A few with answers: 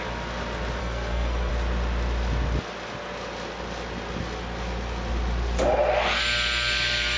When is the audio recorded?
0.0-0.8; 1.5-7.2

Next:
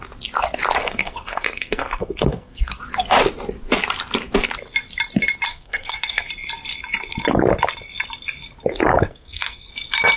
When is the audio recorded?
0.0-0.8; 2.8-5.5; 6.3-8.9; 9.7-10.2